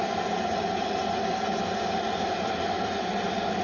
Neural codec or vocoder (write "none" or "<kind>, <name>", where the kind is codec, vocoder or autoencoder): none